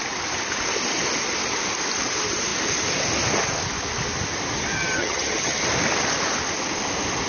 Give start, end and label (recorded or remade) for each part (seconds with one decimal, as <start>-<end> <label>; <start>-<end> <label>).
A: 0.0-4.7 recorded; 4.7-5.6 remade; 5.6-7.3 recorded